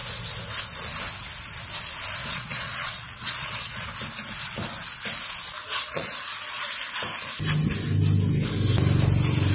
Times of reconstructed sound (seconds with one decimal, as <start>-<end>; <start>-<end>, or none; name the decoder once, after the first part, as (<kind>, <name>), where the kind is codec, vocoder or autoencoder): 2.2-3.9 (vocoder, Vocos); 5.6-6.7